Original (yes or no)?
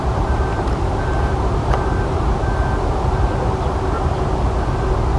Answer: yes